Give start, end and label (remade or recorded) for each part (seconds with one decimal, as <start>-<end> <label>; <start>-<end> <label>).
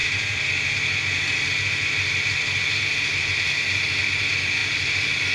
0.0-4.6 recorded; 4.6-5.3 remade